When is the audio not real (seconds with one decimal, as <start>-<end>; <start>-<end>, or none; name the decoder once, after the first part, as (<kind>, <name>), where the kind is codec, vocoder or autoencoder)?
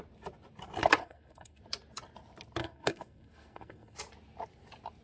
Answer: 1.0-1.6 (codec, SNAC); 2.6-4.0